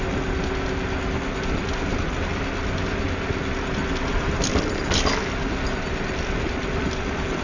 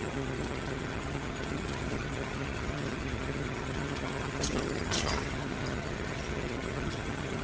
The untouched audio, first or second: first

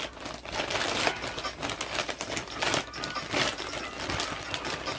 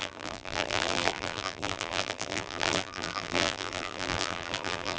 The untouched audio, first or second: first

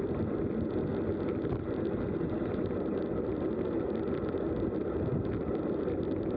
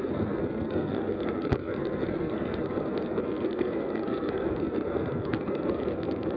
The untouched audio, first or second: first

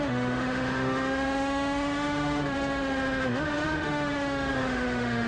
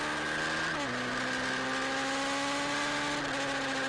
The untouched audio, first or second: second